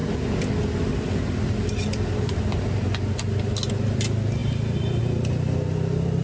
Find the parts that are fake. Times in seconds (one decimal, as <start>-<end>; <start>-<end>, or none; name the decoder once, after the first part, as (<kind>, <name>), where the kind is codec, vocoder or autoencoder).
none